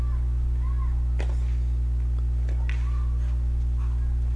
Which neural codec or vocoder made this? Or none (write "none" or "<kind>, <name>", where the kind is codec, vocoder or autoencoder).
none